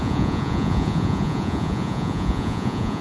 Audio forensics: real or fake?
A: fake